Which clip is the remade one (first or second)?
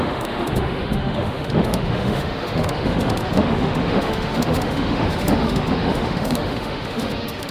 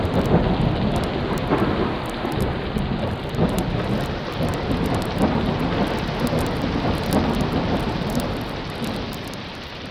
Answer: first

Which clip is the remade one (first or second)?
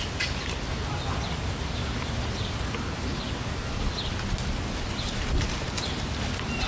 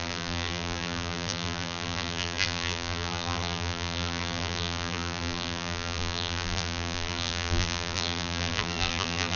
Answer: second